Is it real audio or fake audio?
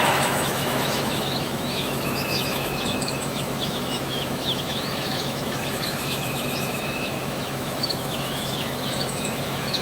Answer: fake